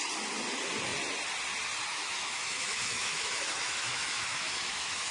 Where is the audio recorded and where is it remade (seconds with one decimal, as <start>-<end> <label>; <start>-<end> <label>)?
0.0-1.9 recorded; 1.9-5.1 remade